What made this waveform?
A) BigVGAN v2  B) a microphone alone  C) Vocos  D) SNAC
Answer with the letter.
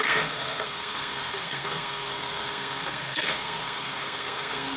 D